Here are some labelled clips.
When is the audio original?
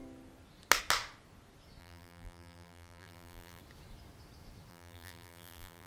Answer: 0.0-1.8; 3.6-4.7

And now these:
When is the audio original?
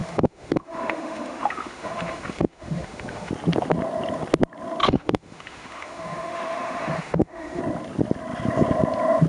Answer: 3.3-4.8; 7.6-9.3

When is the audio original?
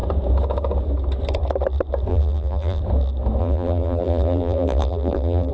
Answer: 0.0-2.1; 2.8-3.4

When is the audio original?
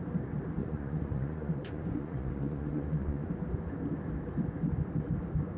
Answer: 0.0-0.6; 3.3-5.6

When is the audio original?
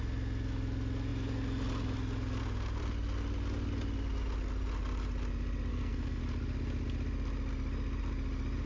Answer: 0.0-5.7; 6.2-8.7